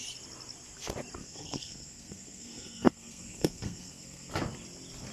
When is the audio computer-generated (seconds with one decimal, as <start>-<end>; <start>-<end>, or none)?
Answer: 1.2-4.3